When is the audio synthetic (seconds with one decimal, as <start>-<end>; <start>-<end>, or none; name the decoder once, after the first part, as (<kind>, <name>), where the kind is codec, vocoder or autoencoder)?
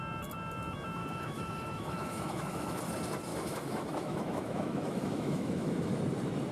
1.0-2.8 (autoencoder, DAC-VAE); 3.3-6.0